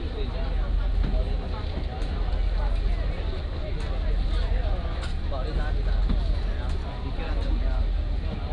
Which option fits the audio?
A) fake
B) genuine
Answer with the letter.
B